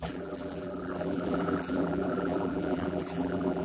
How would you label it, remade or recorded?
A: remade